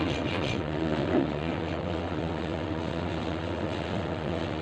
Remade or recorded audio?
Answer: remade